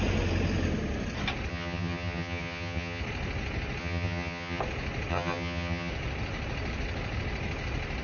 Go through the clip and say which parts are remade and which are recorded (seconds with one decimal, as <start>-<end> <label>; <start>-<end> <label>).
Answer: 0.0-1.5 recorded; 1.5-3.0 remade; 3.0-3.8 recorded; 3.8-4.6 remade; 4.6-5.1 recorded; 5.1-5.9 remade; 5.9-8.0 recorded